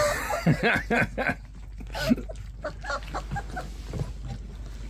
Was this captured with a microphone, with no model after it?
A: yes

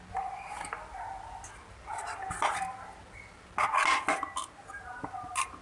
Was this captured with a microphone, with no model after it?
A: yes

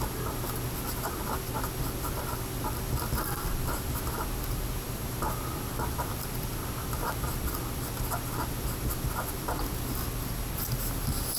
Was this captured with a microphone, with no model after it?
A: yes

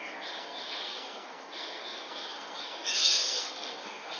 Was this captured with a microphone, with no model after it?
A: no